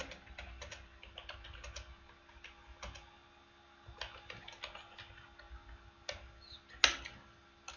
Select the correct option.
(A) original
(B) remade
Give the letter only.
A